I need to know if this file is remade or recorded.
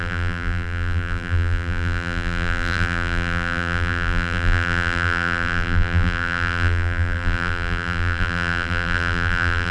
remade